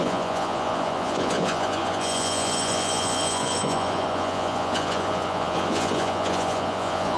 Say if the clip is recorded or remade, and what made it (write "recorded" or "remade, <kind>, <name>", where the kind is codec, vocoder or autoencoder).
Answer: remade, vocoder, Vocos